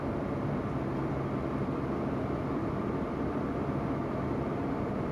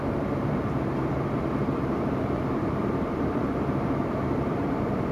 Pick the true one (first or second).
first